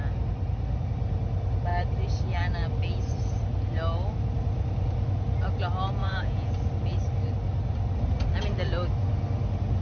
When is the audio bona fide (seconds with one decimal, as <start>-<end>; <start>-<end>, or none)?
0.0-6.0; 6.5-9.8